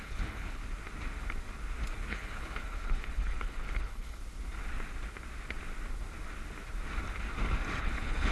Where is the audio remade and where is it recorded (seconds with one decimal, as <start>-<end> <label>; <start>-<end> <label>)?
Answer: 0.0-0.6 remade; 0.6-2.1 recorded; 2.1-4.2 remade; 4.2-7.8 recorded; 7.8-8.3 remade